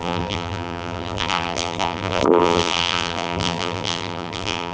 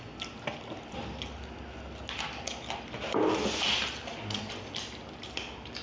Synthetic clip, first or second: first